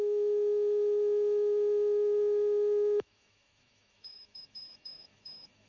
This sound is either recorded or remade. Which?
remade